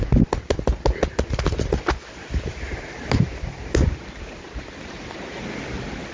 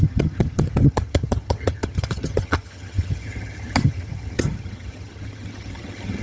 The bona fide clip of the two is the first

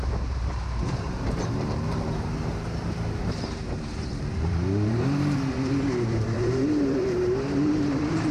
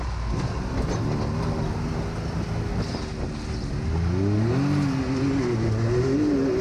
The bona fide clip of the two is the second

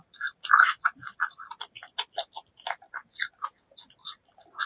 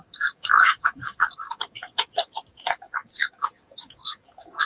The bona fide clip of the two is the first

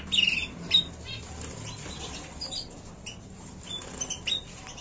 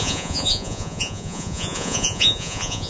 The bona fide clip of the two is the first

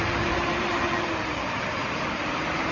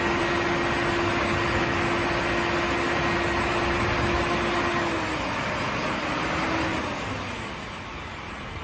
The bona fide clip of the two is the second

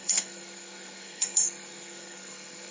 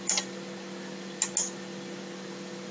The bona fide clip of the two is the second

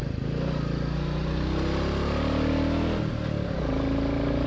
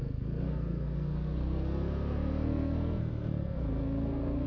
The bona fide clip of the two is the first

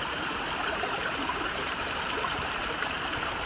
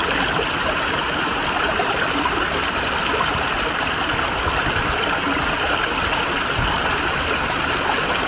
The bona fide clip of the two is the second